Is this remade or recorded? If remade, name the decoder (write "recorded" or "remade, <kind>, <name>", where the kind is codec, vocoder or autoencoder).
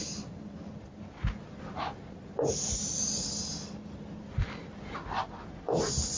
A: recorded